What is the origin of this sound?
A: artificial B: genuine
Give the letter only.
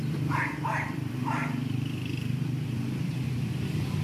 A